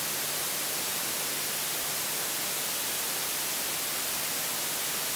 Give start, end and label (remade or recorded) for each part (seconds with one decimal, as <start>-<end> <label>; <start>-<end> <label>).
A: 0.0-5.2 recorded